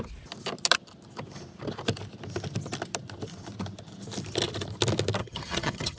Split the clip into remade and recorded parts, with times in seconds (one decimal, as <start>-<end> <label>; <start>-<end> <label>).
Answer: 0.0-5.2 recorded; 5.2-6.0 remade